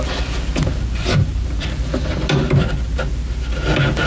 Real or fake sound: real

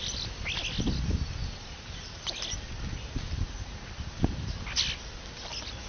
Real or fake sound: real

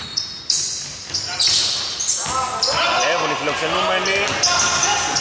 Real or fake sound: real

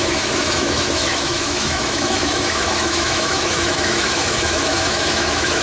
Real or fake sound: fake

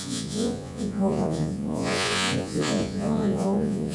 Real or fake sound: fake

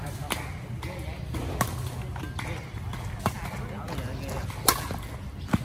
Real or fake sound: real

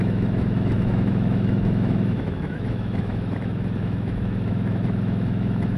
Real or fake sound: fake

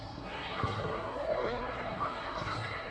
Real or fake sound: fake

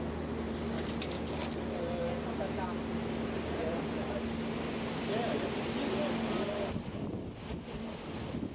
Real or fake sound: real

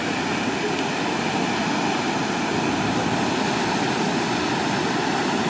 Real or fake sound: real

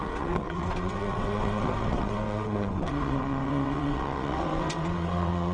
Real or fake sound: fake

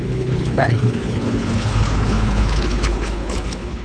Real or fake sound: fake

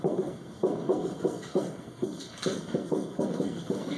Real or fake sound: fake